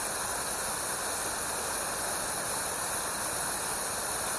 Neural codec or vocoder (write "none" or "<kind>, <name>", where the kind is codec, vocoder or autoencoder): none